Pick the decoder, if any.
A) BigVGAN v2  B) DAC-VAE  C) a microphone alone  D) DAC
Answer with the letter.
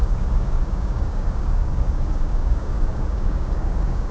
D